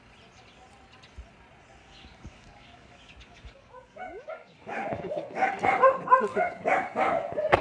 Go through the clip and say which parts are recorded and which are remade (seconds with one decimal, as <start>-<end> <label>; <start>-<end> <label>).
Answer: 0.0-1.8 recorded; 1.8-5.5 remade; 5.5-6.3 recorded; 6.3-7.6 remade